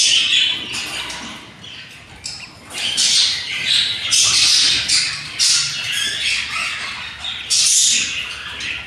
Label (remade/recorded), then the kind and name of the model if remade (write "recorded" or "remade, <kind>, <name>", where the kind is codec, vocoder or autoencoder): recorded